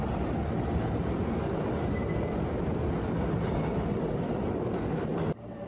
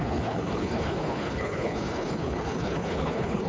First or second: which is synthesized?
second